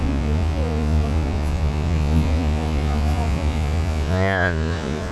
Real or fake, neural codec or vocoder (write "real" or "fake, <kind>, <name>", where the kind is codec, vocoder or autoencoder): fake, vocoder, Vocos